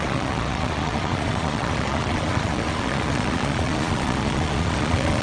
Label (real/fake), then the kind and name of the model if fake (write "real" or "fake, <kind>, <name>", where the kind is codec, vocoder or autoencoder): fake, vocoder, Vocos